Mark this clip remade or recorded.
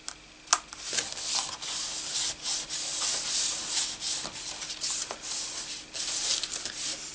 recorded